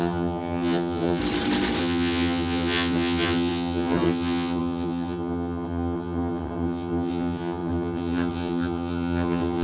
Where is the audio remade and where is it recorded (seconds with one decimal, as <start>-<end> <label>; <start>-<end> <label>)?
0.0-1.2 remade; 1.2-1.8 recorded; 1.8-9.6 remade